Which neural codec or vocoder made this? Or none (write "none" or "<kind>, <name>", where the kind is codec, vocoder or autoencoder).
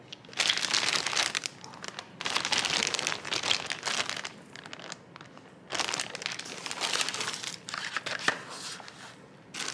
none